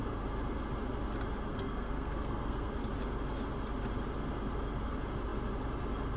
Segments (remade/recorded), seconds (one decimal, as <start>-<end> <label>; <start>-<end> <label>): 0.0-1.5 recorded; 1.5-2.7 remade; 2.7-6.2 recorded